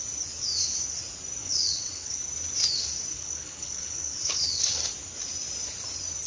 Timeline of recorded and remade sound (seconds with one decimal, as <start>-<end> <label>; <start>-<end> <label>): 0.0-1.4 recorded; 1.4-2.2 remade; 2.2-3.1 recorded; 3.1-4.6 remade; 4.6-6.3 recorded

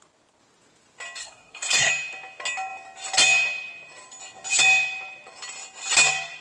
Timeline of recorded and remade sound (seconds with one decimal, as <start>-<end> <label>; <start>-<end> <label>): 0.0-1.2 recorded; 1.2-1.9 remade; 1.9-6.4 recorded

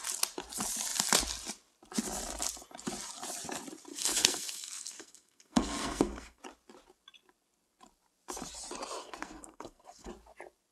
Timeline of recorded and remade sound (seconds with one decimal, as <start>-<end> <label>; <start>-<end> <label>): 0.0-3.9 recorded; 3.9-6.4 remade; 6.4-9.0 recorded; 9.0-10.1 remade; 10.1-10.7 recorded

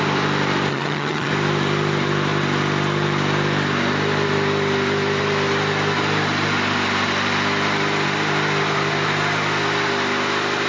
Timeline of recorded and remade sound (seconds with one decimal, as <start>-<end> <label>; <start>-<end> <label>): 0.0-0.7 recorded; 0.7-1.3 remade; 1.3-10.7 recorded

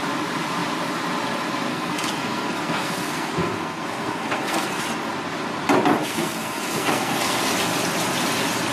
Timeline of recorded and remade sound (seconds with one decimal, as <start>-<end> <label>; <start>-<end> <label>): 0.0-1.7 recorded; 1.7-4.8 remade; 4.8-6.0 recorded; 6.0-7.5 remade; 7.5-8.7 recorded

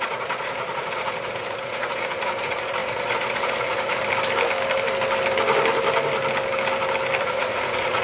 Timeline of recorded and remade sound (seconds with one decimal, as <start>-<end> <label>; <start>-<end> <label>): 0.0-4.0 remade; 4.0-7.2 recorded; 7.2-8.0 remade

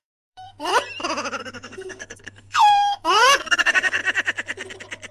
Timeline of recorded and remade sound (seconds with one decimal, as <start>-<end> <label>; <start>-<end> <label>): 0.0-0.7 remade; 0.7-1.4 recorded; 1.4-4.0 remade; 4.0-5.1 recorded